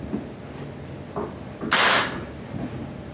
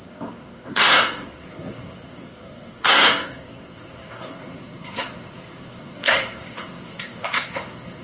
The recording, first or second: first